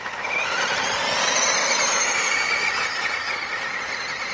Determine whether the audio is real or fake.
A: real